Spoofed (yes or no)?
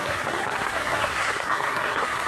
yes